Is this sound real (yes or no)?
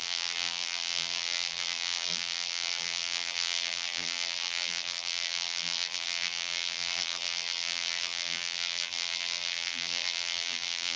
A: no